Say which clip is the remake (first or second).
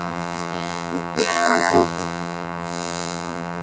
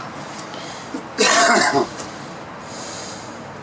first